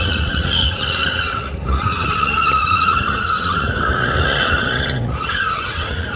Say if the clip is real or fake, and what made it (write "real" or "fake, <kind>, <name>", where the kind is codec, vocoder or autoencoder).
fake, vocoder, Vocos